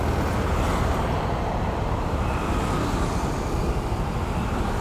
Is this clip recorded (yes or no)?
yes